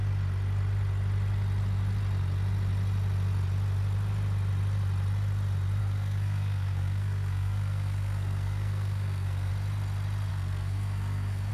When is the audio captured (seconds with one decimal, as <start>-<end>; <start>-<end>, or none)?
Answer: 0.0-5.8; 9.5-10.3